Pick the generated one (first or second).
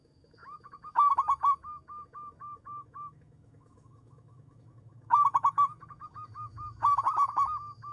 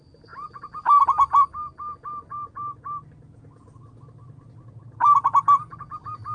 first